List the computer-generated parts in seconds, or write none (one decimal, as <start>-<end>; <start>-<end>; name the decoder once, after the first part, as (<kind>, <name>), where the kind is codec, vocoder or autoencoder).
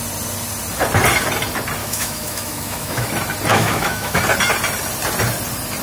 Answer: 1.8-3.1 (autoencoder, DAC-VAE); 3.5-4.2